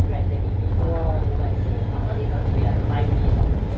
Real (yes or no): yes